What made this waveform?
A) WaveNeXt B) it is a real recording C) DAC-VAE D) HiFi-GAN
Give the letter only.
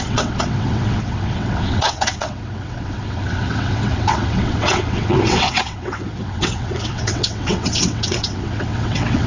A